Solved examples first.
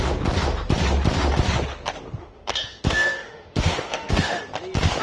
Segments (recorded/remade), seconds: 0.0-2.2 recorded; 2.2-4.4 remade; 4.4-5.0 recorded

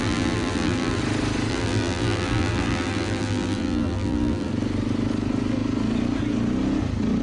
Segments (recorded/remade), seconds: 0.0-1.0 remade; 1.0-1.5 recorded; 1.5-4.5 remade; 4.5-7.2 recorded

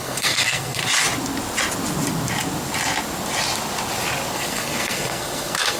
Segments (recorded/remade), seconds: 0.0-0.8 remade; 0.8-4.3 recorded; 4.3-5.8 remade